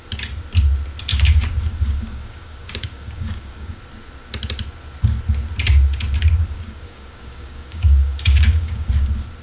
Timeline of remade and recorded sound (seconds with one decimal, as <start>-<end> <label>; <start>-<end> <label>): 0.0-1.1 recorded; 1.1-3.8 remade; 3.8-6.4 recorded; 6.4-8.9 remade; 8.9-9.4 recorded